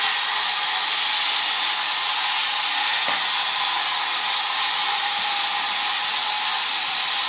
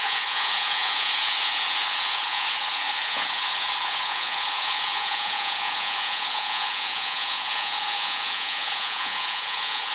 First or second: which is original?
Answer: first